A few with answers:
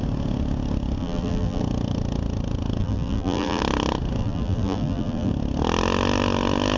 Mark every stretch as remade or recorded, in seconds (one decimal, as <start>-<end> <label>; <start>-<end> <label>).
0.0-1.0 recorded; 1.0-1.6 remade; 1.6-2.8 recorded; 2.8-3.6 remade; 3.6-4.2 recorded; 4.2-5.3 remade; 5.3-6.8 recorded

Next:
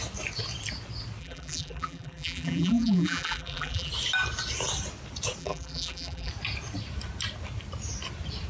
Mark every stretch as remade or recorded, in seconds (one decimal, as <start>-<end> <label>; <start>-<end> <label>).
0.0-1.2 recorded; 1.2-3.9 remade; 3.9-5.4 recorded; 5.4-6.3 remade; 6.3-8.5 recorded

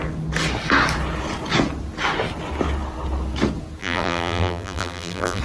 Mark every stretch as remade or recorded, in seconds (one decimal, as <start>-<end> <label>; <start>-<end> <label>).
0.0-3.8 recorded; 3.8-5.4 remade

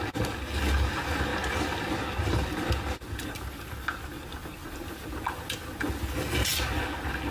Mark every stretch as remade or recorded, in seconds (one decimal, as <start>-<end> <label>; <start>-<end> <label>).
0.0-7.3 recorded

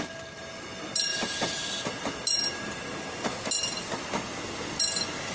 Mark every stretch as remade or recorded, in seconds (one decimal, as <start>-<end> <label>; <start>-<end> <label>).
0.0-5.3 recorded